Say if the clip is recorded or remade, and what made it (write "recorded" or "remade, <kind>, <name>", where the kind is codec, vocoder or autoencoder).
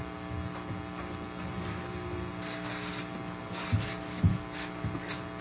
recorded